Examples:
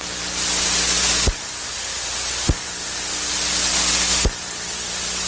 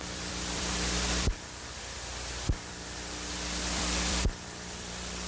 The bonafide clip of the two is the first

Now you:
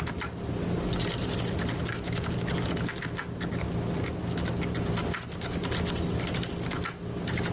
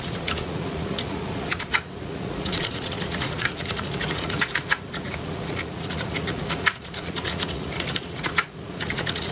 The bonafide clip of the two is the first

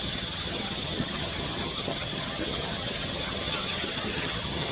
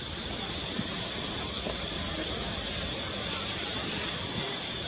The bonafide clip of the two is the second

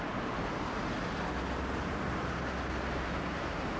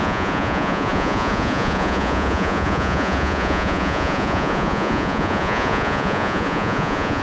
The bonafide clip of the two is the first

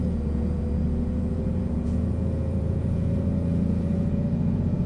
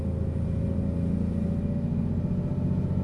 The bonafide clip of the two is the second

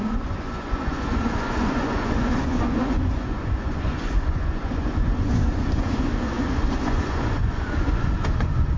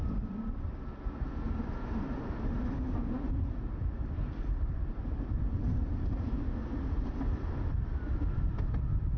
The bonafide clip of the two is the second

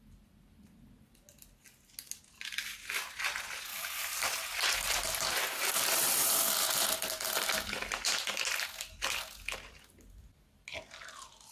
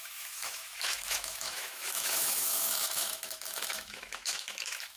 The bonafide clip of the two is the first